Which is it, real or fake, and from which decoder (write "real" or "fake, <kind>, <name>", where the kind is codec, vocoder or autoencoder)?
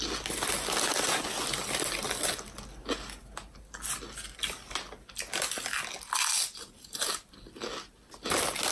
real